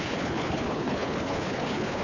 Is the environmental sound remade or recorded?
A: remade